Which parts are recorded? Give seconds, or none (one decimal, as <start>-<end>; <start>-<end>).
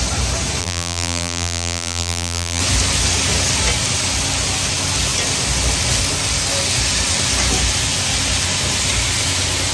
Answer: 0.0-0.6; 2.6-9.7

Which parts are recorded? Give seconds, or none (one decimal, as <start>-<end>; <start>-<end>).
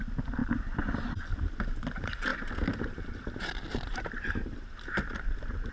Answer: 0.0-0.4; 1.1-2.3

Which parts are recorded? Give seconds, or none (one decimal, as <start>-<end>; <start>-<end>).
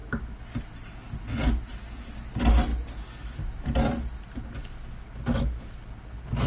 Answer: 0.0-6.5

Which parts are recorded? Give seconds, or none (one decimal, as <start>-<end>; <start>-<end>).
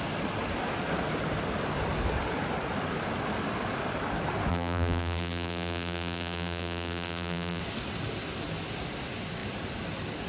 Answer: 0.0-4.5; 7.6-10.3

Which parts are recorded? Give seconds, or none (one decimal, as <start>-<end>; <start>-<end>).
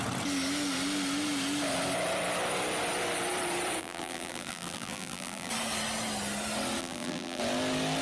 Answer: 0.0-3.8; 5.5-6.8; 7.4-8.0